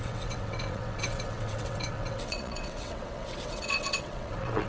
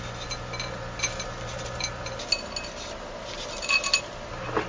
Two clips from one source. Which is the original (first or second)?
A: second